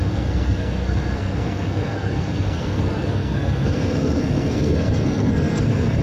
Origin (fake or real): fake